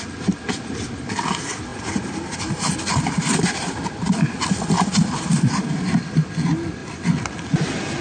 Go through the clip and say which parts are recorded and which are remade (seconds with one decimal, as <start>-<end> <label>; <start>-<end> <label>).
0.0-8.0 recorded